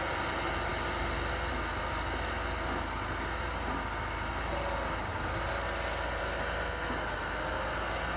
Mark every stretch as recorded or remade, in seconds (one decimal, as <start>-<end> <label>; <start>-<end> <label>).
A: 0.0-8.2 recorded